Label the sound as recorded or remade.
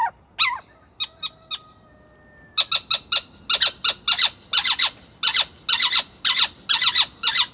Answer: recorded